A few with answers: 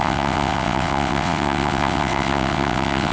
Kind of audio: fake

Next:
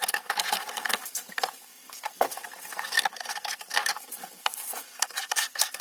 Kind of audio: fake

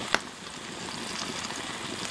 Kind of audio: real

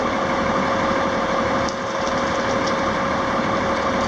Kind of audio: real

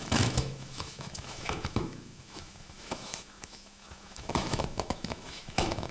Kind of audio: fake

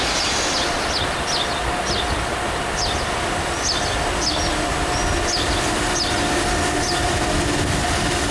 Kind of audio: real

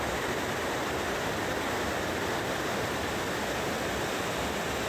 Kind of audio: real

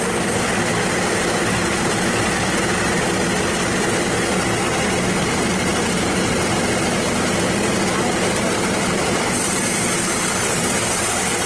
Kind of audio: real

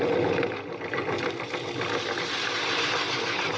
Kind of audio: real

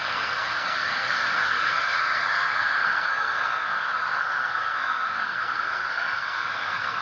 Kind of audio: fake